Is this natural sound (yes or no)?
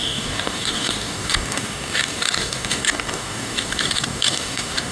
no